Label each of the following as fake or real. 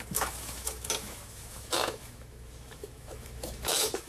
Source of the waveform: fake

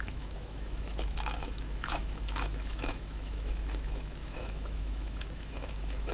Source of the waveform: fake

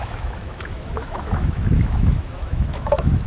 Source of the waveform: fake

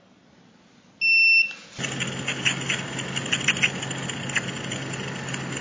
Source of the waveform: real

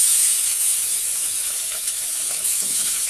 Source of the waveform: fake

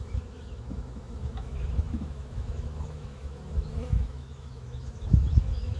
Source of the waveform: fake